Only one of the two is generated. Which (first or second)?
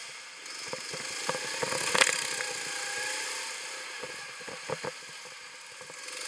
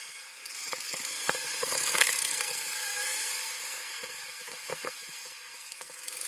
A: second